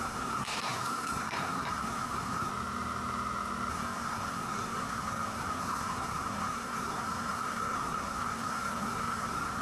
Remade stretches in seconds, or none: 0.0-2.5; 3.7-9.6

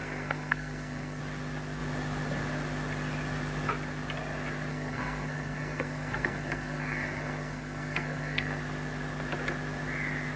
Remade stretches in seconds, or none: 0.0-1.2; 4.7-8.6

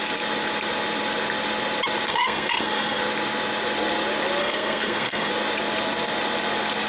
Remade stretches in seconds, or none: 2.1-3.0; 4.4-5.3